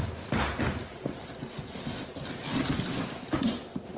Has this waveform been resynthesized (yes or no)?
no